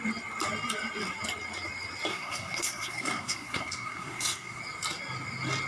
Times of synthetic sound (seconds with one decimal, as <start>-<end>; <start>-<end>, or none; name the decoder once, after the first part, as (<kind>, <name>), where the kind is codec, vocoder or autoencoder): 2.1-4.6 (codec, SNAC)